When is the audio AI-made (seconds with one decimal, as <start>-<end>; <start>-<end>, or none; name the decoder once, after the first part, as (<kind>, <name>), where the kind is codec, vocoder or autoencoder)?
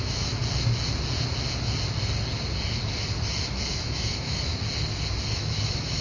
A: 0.0-0.4 (autoencoder, DAC-VAE); 3.7-4.5; 5.3-6.0